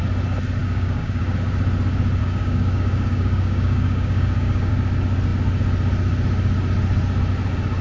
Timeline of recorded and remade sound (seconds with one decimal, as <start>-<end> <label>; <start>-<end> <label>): 0.0-0.6 recorded; 0.6-1.2 remade; 1.2-2.2 recorded; 2.2-4.7 remade; 4.7-7.8 recorded